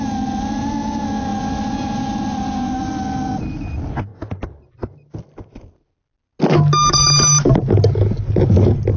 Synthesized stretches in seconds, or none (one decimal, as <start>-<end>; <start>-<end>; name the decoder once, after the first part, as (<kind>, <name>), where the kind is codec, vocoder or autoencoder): 1.3-2.9 (vocoder, BigVGAN v2)